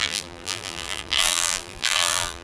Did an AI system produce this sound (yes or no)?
yes